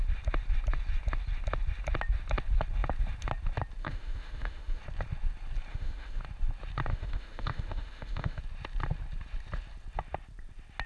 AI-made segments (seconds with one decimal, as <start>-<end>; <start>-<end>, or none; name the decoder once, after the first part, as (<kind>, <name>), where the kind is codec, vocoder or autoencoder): 3.8-4.8 (autoencoder, DAC-VAE); 5.7-6.2; 6.9-8.4